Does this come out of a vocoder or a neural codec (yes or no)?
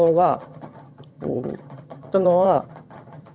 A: yes